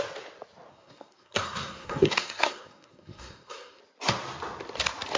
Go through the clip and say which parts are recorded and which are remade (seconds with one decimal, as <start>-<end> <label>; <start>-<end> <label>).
0.0-0.7 recorded; 0.7-3.8 remade; 3.8-5.2 recorded